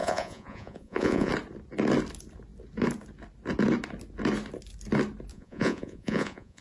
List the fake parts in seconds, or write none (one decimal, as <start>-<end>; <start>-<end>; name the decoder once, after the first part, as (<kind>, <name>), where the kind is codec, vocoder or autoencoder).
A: 0.0-1.3 (vocoder, Vocos); 5.3-6.6